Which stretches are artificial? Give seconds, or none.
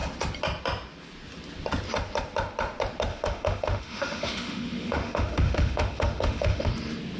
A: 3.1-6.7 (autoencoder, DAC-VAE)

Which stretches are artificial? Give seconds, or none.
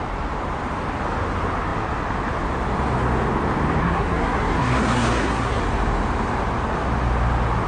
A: 3.8-5.6 (codec, SNAC)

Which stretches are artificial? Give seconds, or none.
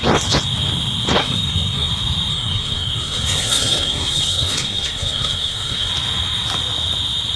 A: 1.2-1.9 (codec, SNAC); 2.3-5.9